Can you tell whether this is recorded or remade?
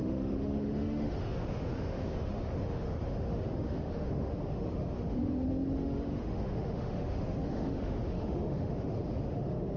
remade